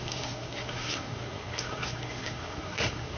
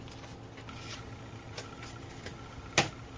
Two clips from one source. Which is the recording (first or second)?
second